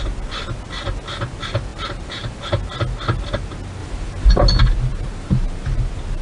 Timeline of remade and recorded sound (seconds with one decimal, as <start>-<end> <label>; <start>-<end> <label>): 0.0-1.7 recorded; 1.7-2.4 remade; 2.4-3.8 recorded; 3.8-4.3 remade; 4.3-4.9 recorded; 4.9-5.8 remade; 5.8-6.2 recorded